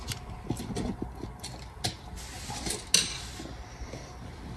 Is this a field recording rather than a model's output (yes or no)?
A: yes